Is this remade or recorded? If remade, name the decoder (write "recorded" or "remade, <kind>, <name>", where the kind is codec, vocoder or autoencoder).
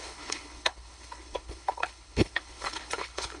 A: remade, codec, HILCodec